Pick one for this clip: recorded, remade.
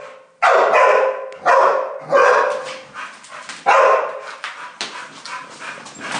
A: recorded